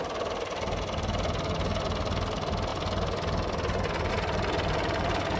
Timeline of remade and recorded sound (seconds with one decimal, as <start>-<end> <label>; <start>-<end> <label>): 0.0-5.4 recorded

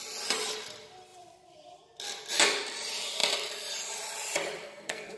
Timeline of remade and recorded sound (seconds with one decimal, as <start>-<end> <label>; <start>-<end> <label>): 0.0-4.6 recorded; 4.6-5.2 remade

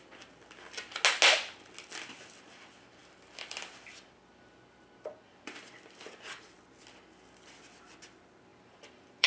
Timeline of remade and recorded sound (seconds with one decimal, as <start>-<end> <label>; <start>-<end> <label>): 0.0-3.0 recorded; 3.0-5.6 remade; 5.6-8.5 recorded; 8.5-9.3 remade